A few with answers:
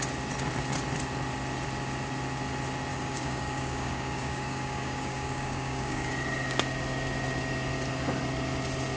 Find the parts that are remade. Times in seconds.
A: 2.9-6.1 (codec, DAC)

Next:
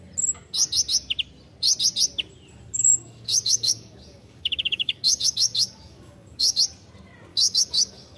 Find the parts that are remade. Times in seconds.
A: 2.7-6.6 (codec, DAC); 7.3-8.2

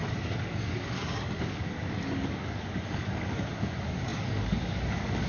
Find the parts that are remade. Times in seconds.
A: 0.0-5.3 (codec, DAC)

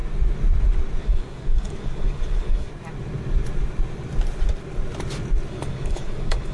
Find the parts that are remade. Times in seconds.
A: 1.0-2.7 (codec, DAC); 5.5-6.5

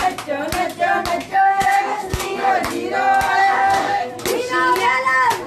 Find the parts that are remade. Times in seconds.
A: 1.3-2.5 (codec, DAC); 3.4-4.1

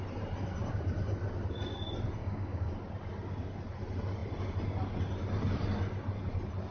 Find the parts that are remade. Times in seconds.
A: 2.2-2.7 (codec, DAC)

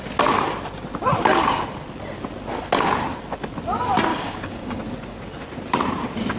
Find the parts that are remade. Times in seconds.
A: 4.1-4.8 (codec, DAC)

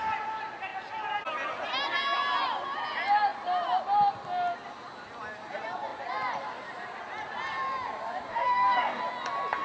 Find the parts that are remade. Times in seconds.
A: 8.3-9.0 (codec, DAC)